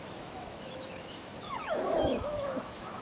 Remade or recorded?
remade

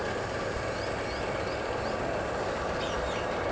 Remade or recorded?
recorded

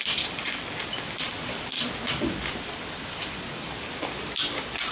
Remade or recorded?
recorded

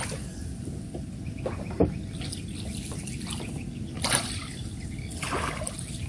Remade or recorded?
recorded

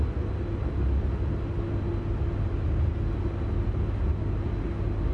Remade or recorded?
recorded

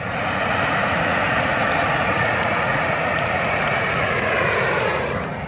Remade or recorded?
remade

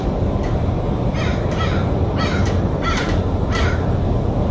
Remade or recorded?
recorded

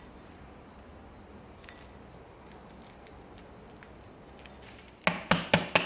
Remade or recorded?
recorded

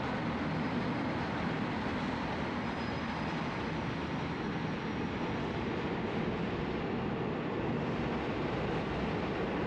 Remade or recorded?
recorded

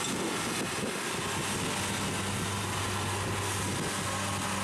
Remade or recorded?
recorded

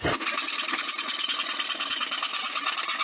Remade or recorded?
recorded